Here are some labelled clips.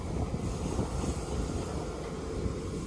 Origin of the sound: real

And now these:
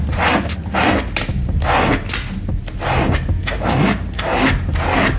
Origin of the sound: real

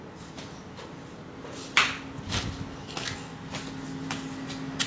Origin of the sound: real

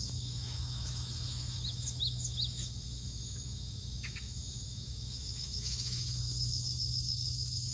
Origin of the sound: fake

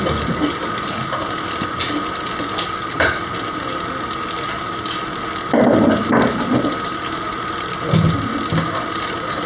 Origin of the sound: real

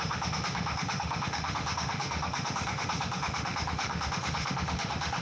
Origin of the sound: fake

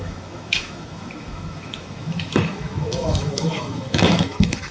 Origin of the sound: fake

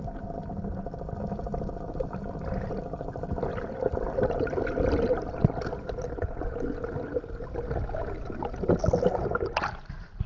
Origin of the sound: real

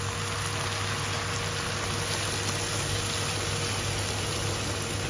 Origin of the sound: real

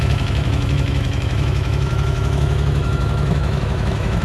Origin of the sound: fake